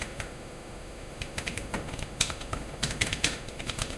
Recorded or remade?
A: remade